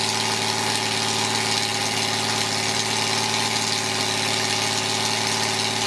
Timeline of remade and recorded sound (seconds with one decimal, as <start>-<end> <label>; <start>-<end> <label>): 0.0-5.9 recorded